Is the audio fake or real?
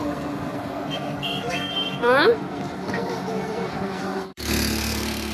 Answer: fake